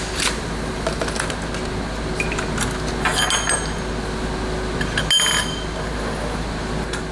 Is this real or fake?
real